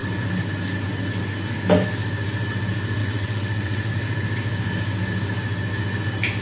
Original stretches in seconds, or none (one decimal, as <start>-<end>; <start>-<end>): 0.0-3.0; 3.9-6.4

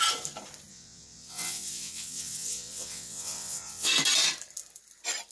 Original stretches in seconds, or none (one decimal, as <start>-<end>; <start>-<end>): 0.0-0.7; 3.9-5.3

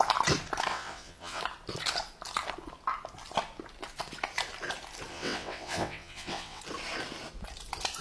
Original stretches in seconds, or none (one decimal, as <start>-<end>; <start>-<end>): 0.0-0.7; 1.4-5.1; 6.6-8.0

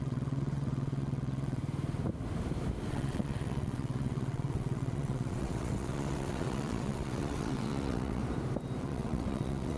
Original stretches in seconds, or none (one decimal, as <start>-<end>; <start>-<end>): 1.6-2.9; 8.2-8.8

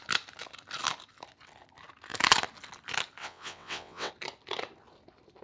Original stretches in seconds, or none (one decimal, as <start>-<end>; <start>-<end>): 0.0-3.2; 4.1-5.4

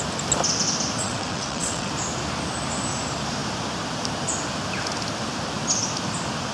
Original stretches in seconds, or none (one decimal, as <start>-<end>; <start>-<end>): 0.0-1.0; 1.9-6.5